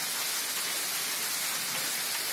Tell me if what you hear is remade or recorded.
recorded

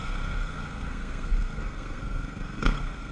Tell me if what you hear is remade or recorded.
remade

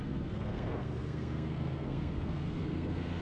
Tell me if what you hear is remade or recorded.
remade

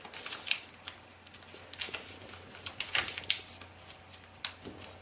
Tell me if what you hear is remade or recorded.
recorded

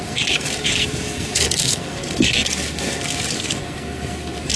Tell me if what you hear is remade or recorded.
remade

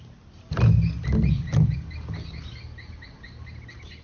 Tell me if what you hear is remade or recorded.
recorded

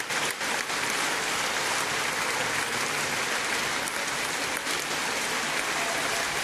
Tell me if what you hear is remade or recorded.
recorded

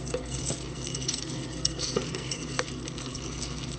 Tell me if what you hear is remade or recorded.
remade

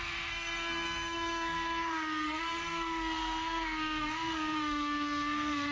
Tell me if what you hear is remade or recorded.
remade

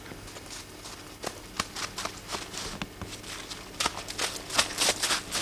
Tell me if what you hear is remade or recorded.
recorded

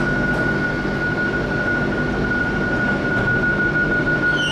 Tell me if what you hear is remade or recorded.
recorded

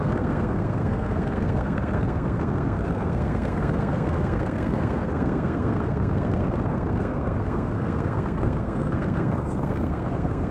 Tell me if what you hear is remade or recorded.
remade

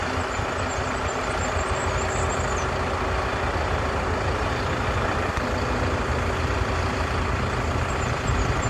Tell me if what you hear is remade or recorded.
recorded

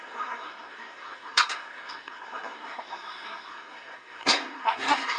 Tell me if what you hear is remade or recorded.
remade